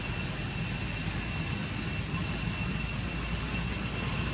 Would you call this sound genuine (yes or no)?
yes